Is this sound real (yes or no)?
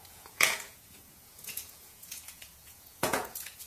no